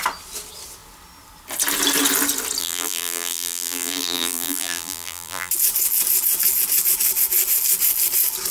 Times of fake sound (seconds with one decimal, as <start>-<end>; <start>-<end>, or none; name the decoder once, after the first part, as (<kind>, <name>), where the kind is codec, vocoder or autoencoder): 2.6-5.5 (vocoder, BigVGAN v2)